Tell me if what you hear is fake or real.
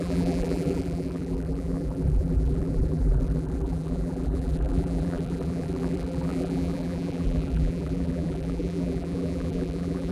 fake